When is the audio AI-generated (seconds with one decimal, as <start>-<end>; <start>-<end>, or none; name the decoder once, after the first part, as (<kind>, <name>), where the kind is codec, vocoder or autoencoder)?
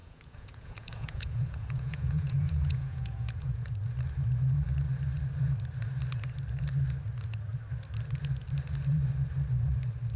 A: 0.0-3.7 (vocoder, Vocos)